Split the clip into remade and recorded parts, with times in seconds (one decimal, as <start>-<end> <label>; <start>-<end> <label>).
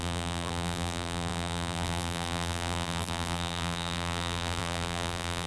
0.0-5.5 remade